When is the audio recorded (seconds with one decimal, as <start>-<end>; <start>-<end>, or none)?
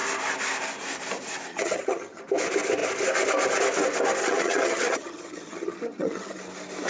0.0-1.5; 2.2-4.2; 6.4-6.9